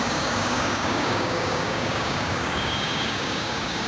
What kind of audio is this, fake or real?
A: fake